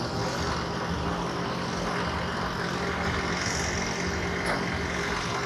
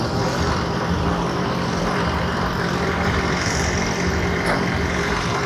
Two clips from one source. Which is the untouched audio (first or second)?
first